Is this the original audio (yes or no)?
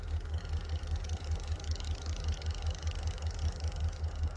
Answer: no